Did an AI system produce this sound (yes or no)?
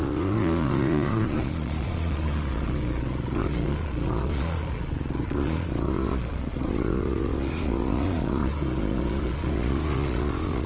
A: yes